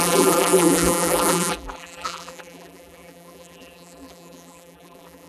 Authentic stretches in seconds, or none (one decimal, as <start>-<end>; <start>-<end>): none